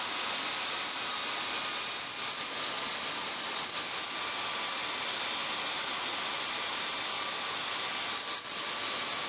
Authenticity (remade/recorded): recorded